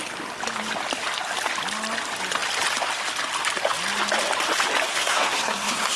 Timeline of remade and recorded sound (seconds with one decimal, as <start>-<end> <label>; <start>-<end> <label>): 0.0-4.9 recorded; 4.9-6.0 remade